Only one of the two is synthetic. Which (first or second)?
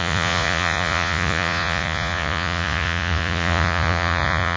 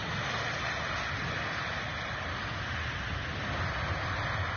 first